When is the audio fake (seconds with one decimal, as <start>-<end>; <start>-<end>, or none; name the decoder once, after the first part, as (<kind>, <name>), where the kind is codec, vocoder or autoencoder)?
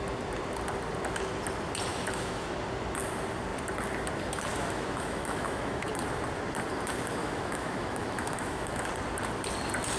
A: 1.9-2.5 (autoencoder, DAC-VAE); 4.5-5.9; 7.2-8.9